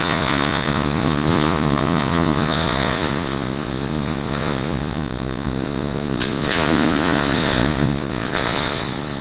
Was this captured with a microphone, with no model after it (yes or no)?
no